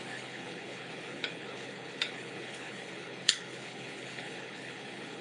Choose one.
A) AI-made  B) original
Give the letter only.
A